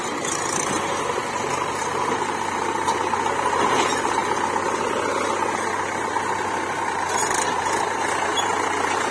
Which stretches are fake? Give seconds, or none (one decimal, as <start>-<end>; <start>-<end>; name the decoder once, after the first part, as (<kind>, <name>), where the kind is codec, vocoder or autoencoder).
none